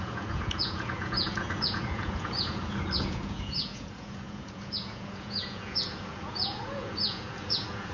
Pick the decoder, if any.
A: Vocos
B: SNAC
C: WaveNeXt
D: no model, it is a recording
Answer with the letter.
A